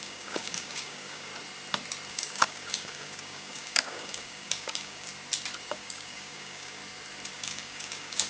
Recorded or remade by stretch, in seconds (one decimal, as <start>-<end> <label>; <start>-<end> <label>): 0.0-1.3 remade; 1.3-2.1 recorded; 2.1-5.1 remade; 5.1-5.6 recorded; 5.6-6.8 remade; 6.8-7.3 recorded; 7.3-8.3 remade